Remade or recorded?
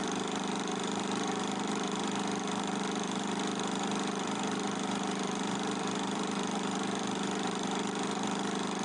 remade